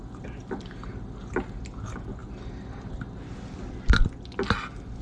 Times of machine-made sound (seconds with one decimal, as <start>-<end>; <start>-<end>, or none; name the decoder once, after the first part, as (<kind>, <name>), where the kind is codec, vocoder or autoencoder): none